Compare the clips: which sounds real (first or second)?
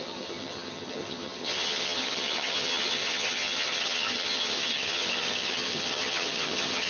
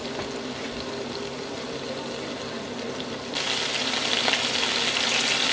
second